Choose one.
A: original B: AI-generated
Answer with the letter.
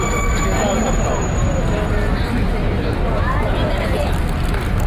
A